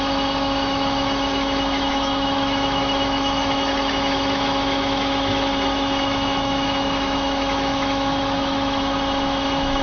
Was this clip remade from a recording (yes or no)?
yes